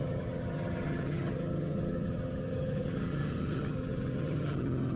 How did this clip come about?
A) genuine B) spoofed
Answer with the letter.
B